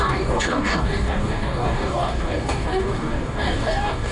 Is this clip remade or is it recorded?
remade